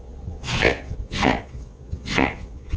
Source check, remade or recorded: remade